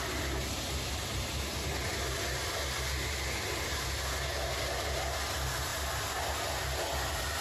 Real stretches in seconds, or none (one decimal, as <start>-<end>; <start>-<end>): 0.0-5.7; 6.2-7.4